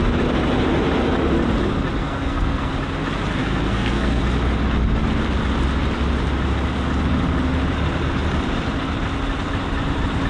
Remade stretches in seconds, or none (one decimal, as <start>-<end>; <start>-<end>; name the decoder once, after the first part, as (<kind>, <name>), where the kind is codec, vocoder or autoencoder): 2.0-2.7 (codec, SNAC); 3.4-4.2